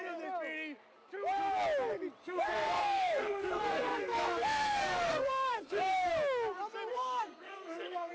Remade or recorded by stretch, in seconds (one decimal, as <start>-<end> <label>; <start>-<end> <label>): 0.0-2.2 recorded; 2.2-6.1 remade; 6.1-6.9 recorded; 6.9-8.1 remade